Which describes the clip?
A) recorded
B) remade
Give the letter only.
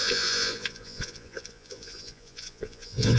B